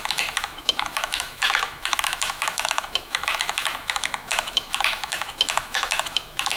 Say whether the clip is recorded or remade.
remade